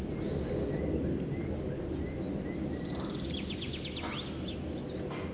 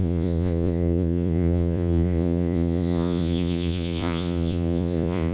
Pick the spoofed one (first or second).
second